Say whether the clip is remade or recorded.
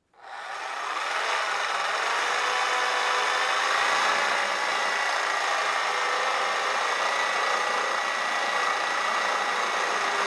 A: recorded